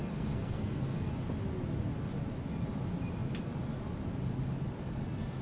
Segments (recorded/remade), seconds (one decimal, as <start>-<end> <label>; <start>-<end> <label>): 0.0-1.1 remade; 1.1-5.4 recorded